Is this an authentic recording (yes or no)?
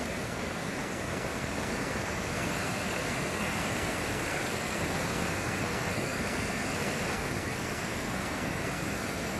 no